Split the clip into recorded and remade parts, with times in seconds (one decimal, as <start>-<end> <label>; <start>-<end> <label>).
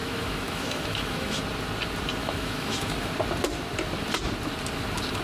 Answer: 0.0-1.4 remade; 1.4-2.2 recorded; 2.2-3.1 remade; 3.1-5.2 recorded